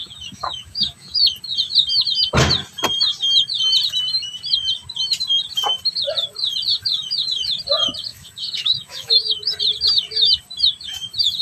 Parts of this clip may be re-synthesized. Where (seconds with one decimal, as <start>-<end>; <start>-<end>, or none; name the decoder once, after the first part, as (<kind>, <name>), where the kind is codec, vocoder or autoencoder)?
0.0-1.2 (autoencoder, DAC-VAE); 8.1-9.5